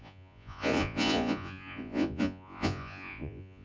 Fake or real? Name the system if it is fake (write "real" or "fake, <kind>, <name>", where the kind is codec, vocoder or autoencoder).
fake, vocoder, Vocos